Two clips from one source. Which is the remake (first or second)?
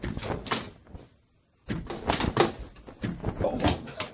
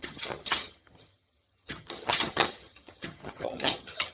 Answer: second